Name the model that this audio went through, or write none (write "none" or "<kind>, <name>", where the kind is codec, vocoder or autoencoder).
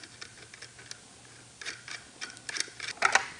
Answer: none